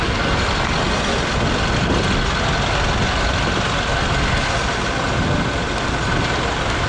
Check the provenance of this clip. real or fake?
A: real